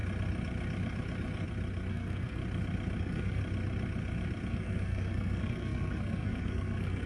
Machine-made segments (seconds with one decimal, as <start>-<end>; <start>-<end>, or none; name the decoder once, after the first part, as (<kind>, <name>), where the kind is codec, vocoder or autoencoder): 1.9-2.4 (codec, SNAC); 3.0-3.4; 4.5-7.1